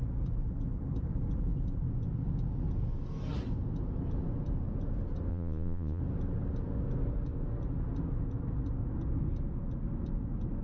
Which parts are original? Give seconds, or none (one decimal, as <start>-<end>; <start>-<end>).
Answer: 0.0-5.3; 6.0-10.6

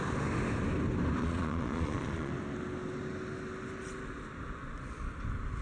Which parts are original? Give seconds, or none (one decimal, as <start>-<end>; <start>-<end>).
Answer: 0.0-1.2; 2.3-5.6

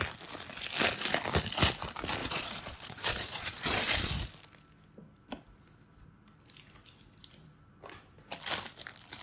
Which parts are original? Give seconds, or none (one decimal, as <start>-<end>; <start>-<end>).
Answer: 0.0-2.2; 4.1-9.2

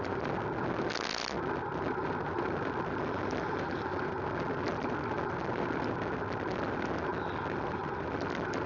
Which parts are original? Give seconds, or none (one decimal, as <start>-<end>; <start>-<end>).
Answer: 0.0-8.7

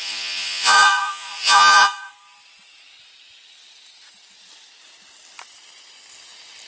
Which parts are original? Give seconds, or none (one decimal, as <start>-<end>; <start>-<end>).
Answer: 2.1-6.7